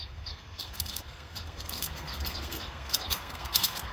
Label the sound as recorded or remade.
remade